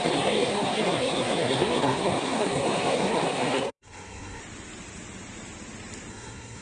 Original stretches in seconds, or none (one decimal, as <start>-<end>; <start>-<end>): 4.4-6.1